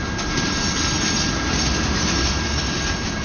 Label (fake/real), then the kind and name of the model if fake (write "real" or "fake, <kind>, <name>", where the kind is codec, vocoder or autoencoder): real